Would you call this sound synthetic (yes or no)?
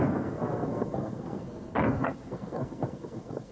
yes